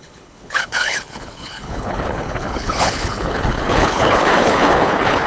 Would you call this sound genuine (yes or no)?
no